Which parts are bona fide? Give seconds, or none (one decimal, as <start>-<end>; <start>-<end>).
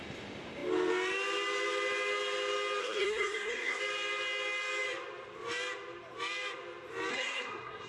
0.0-2.8; 3.8-7.1